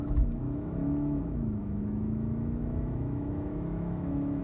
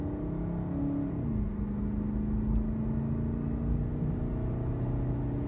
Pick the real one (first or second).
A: second